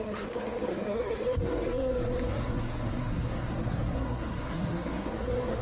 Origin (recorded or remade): remade